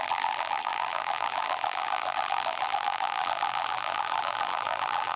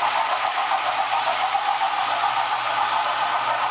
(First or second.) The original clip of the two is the second